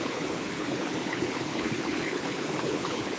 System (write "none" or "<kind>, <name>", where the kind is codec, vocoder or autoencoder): codec, HILCodec